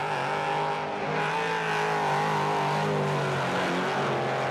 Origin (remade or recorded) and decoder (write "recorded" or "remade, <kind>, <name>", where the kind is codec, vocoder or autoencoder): recorded